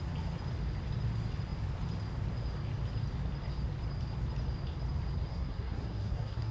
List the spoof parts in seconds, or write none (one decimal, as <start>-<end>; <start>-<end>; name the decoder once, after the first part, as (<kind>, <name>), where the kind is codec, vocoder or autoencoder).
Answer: 5.3-6.5 (codec, SNAC)